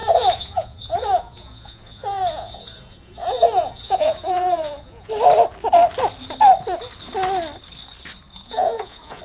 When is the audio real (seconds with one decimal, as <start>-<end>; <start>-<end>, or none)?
5.1-8.3